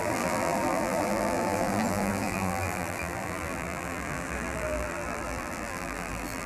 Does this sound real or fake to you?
fake